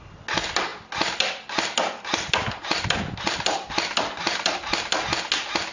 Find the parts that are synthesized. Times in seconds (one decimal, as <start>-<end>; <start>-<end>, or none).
0.7-3.7